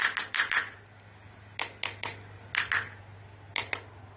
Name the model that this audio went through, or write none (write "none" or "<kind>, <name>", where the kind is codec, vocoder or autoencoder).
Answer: none